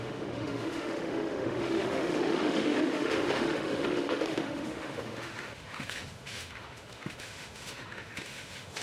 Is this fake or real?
fake